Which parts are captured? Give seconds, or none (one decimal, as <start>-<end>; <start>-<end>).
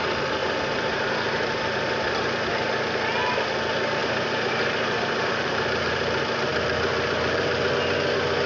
0.0-0.4; 2.5-4.0; 7.7-8.5